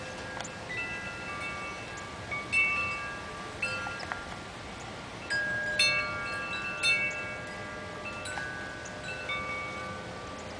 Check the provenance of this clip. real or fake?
real